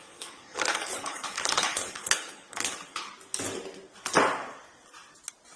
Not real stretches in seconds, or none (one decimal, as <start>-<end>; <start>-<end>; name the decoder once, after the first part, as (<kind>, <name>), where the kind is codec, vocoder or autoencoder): 0.0-3.1 (codec, HILCodec)

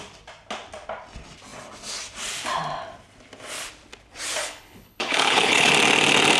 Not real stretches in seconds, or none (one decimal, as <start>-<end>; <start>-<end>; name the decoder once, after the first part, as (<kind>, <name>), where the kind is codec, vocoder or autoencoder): 4.4-5.7 (codec, HILCodec)

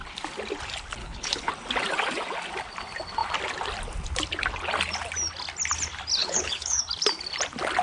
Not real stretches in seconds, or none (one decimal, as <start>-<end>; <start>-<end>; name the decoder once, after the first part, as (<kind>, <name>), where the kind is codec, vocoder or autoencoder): 1.0-1.5 (codec, HILCodec); 6.2-6.8

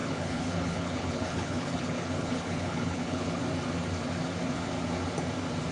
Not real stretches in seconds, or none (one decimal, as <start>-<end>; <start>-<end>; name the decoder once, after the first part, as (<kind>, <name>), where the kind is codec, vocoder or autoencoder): 0.0-3.4 (codec, HILCodec)

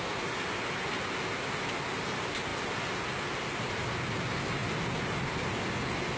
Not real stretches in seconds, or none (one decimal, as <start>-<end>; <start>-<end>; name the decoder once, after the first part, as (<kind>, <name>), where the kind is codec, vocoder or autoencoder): none

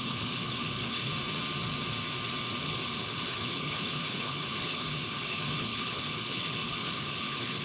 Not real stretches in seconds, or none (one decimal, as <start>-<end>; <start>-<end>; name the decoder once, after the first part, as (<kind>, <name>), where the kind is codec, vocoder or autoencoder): 0.0-1.1 (codec, HILCodec); 2.6-7.6